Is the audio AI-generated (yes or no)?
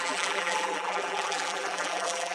yes